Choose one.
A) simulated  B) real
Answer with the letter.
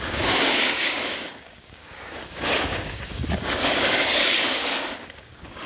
A